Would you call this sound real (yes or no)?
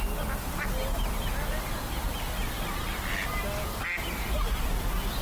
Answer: yes